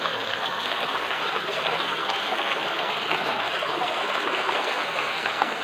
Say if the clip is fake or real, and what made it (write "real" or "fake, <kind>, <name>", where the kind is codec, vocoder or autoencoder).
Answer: fake, codec, SNAC